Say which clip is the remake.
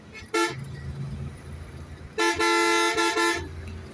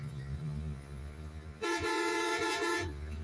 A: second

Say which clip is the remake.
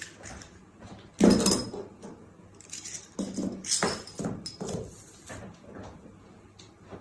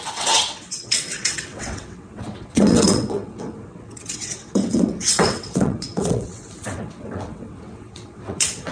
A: second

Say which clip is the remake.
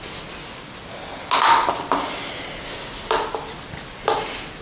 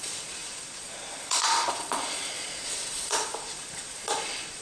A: second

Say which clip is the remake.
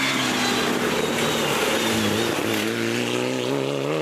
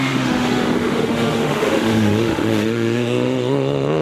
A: second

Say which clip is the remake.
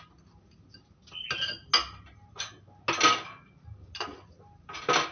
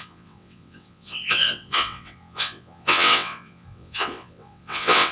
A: second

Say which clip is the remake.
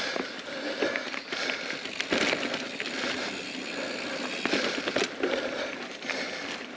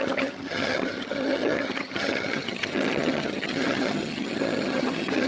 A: second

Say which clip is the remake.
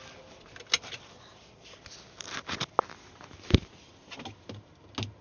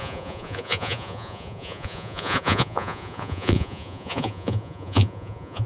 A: second